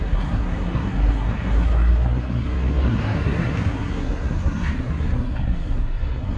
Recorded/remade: remade